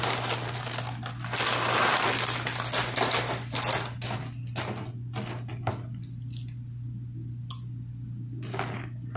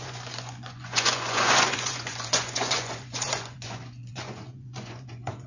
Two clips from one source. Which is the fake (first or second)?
second